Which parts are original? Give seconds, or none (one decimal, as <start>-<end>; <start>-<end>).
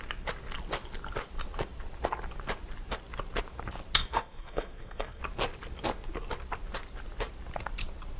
0.0-4.0; 5.2-8.2